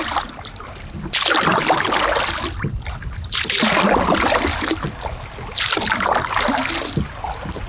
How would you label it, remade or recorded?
recorded